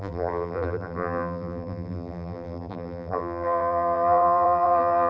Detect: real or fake fake